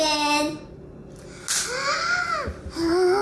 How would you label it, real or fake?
real